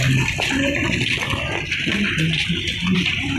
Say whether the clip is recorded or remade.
recorded